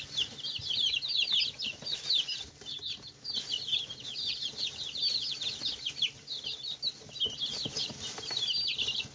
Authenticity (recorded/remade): recorded